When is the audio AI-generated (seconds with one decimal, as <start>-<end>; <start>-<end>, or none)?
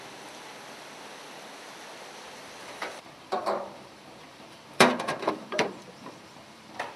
2.6-7.0